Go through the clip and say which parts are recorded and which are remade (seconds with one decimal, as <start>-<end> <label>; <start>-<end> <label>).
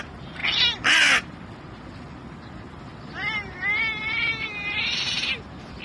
0.0-5.8 recorded